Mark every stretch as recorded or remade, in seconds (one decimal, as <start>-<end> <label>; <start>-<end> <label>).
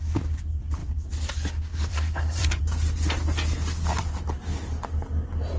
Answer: 0.0-1.9 recorded; 1.9-2.6 remade; 2.6-5.6 recorded